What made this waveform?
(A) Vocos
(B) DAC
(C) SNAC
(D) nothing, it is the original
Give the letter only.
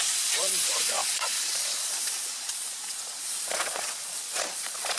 A